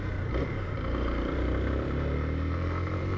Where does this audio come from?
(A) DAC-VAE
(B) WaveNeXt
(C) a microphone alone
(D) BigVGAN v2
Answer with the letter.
D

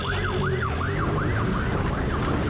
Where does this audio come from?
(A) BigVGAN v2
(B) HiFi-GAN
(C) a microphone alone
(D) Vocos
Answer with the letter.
C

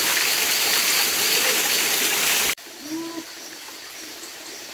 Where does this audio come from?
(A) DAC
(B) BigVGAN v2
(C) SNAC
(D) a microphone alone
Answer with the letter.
B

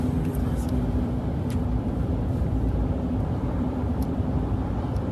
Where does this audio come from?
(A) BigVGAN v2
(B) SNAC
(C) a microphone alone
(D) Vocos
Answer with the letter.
A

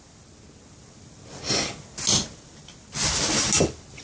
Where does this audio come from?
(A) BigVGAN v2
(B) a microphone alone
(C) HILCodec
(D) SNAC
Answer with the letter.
B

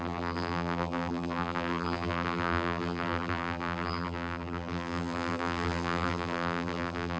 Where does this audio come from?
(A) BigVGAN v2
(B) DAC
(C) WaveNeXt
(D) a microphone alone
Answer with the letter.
A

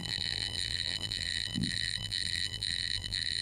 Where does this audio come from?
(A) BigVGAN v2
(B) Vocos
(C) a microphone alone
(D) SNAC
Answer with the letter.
A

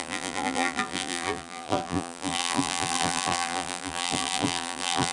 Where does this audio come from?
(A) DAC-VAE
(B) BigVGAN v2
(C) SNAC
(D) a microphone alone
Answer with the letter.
B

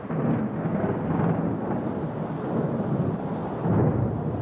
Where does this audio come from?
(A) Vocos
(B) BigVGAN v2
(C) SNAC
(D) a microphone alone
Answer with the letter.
D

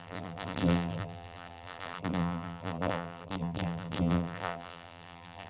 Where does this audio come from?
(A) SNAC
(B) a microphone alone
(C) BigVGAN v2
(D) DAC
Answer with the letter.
C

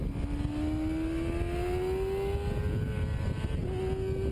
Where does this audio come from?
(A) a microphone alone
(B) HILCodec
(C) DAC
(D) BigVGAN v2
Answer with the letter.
A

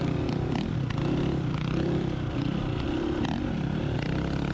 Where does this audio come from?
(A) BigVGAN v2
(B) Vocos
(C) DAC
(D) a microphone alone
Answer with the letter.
A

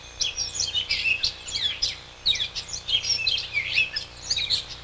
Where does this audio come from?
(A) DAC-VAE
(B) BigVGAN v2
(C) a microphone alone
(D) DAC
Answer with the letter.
B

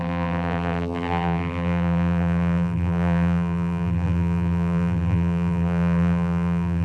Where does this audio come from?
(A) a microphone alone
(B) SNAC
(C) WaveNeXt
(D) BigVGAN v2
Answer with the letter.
D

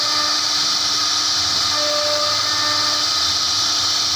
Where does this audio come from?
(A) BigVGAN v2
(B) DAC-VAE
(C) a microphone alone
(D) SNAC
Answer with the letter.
C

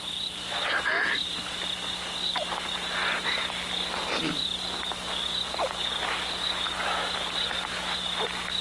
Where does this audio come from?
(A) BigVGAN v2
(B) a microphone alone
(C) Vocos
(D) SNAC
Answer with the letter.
B